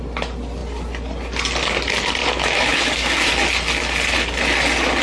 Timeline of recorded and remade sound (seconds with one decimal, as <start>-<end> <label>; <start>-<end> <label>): 0.0-2.2 recorded; 2.2-3.3 remade; 3.3-5.0 recorded